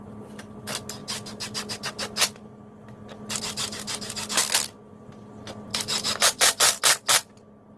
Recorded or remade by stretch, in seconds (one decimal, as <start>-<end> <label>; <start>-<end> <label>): 0.0-7.8 recorded